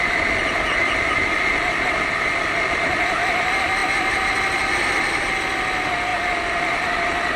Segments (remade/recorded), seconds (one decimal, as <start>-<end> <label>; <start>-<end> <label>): 0.0-7.4 recorded